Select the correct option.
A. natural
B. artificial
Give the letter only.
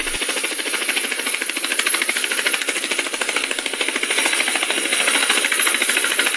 A